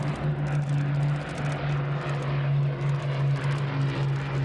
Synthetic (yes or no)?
no